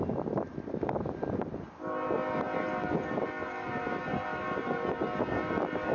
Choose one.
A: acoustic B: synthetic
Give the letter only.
A